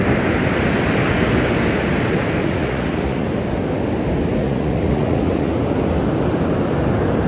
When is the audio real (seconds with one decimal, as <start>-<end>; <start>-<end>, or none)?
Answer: 0.0-2.4; 3.3-4.4; 5.5-7.3